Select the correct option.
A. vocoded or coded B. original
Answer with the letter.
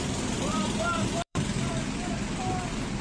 A